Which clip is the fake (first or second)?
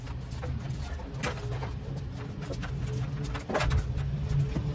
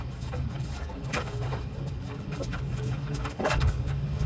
second